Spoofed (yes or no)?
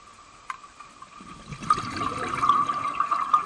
no